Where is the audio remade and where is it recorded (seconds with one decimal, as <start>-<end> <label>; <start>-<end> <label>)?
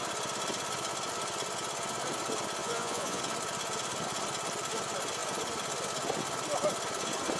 0.0-2.6 recorded; 2.6-3.2 remade; 3.2-7.4 recorded